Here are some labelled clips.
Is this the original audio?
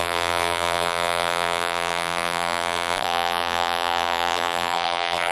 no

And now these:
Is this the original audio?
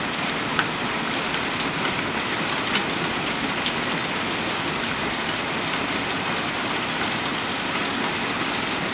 yes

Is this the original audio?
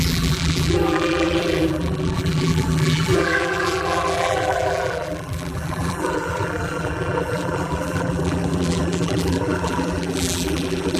no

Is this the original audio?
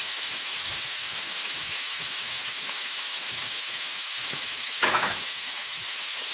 no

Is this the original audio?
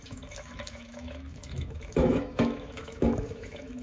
no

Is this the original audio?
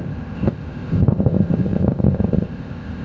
no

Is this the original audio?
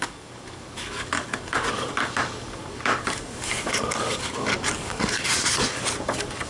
no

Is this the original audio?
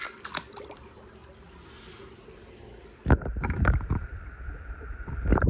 yes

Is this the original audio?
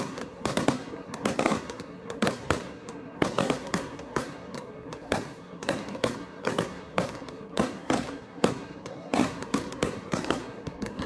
no